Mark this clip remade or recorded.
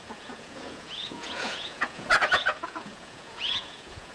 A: remade